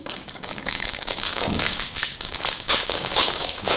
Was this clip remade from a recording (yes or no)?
yes